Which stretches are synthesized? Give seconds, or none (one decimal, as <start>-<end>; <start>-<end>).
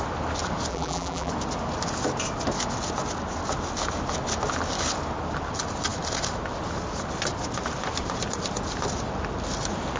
0.7-1.3